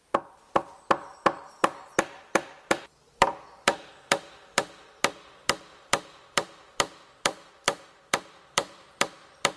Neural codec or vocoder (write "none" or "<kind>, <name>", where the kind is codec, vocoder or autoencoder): vocoder, BigVGAN v2